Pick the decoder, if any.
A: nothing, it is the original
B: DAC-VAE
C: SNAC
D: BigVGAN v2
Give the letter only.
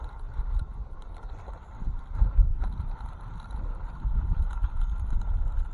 A